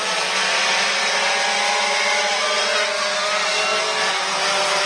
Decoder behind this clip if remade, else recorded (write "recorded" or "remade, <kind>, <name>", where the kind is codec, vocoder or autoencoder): recorded